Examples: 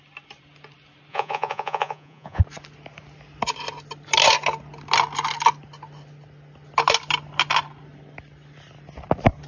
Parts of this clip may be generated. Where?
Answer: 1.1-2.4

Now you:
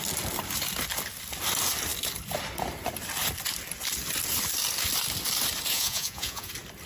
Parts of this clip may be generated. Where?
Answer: 5.7-6.5